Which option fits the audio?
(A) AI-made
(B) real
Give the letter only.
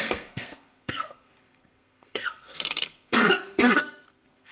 A